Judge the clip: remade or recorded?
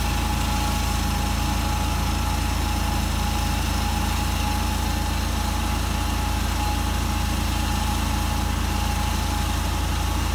recorded